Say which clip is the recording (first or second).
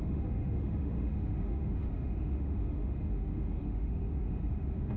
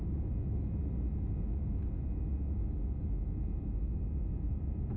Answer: second